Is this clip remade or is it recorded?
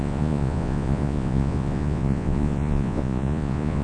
remade